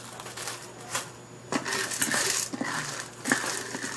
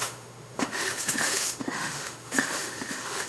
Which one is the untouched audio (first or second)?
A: first